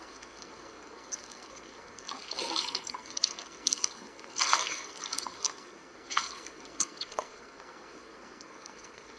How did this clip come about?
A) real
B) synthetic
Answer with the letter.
B